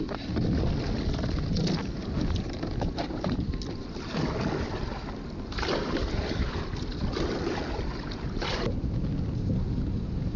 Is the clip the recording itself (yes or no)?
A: yes